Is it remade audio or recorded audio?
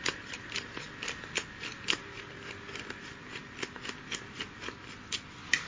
recorded